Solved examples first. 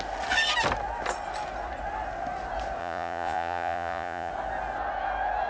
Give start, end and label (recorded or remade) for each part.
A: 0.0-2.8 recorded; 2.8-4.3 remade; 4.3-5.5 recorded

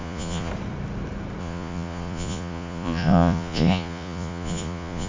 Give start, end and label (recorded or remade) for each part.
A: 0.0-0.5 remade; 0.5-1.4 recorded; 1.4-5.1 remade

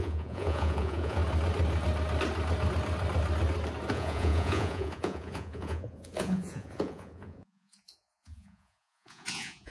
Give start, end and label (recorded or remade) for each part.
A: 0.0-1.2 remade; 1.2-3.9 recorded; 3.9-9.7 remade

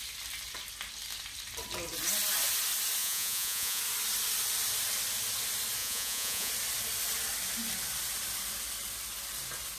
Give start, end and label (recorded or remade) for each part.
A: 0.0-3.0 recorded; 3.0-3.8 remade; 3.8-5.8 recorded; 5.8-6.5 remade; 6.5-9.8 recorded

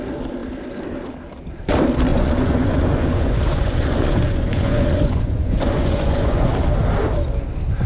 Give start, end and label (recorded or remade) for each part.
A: 0.0-2.1 recorded; 2.1-6.5 remade; 6.5-7.9 recorded

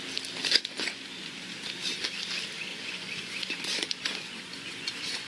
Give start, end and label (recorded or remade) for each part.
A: 0.0-0.4 recorded; 0.4-1.5 remade; 1.5-2.7 recorded; 2.7-5.3 remade